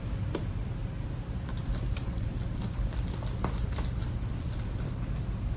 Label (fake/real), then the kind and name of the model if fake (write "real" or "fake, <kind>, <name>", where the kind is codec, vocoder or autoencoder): fake, vocoder, BigVGAN v2